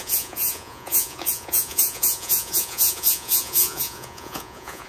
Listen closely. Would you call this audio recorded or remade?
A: remade